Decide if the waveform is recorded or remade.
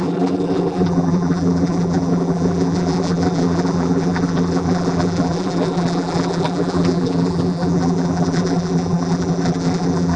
remade